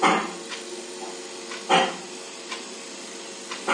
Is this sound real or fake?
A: real